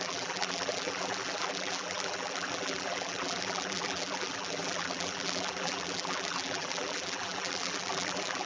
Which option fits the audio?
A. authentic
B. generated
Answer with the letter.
B